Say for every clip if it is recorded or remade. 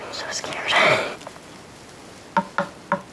recorded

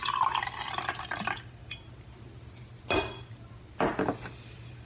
recorded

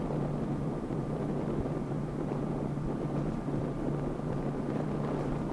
remade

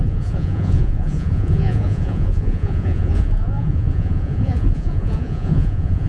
remade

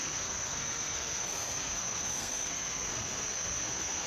remade